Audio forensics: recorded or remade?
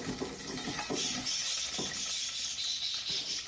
recorded